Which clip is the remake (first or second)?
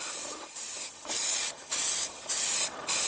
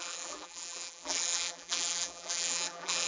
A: second